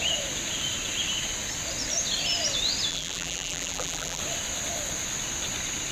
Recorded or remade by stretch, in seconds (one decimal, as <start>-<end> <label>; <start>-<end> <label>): 0.0-2.9 recorded; 2.9-4.2 remade; 4.2-5.9 recorded